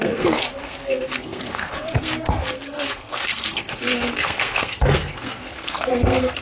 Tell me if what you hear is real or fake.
fake